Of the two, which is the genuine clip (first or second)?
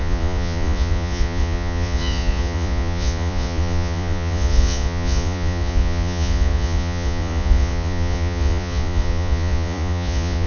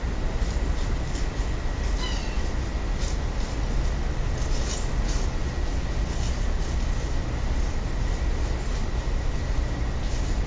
second